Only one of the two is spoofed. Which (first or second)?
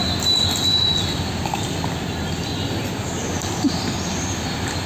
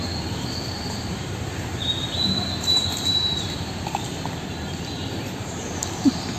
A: second